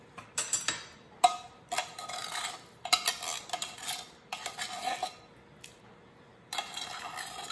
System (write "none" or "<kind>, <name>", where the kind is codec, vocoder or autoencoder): none